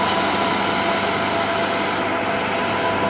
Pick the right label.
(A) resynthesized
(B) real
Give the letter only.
B